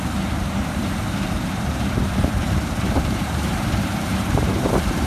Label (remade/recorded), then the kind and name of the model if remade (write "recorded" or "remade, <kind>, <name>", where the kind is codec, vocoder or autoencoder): remade, vocoder, BigVGAN v2